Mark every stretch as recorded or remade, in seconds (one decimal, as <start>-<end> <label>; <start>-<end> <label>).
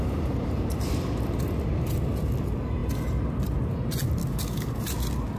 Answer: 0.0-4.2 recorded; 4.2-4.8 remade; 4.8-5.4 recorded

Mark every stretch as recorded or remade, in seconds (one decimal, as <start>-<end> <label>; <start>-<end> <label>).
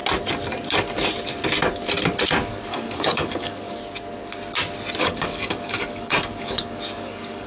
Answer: 0.0-2.5 recorded; 2.5-3.8 remade; 3.8-5.0 recorded; 5.0-7.5 remade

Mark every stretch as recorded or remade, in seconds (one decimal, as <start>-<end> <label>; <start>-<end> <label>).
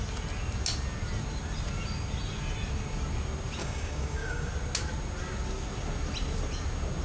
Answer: 0.0-3.6 recorded; 3.6-4.5 remade; 4.5-7.0 recorded